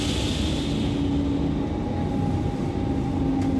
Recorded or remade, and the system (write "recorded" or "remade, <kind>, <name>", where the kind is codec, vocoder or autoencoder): recorded